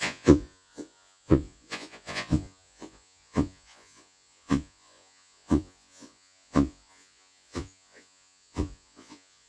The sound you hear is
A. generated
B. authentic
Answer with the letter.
A